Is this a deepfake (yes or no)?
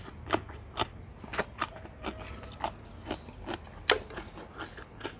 no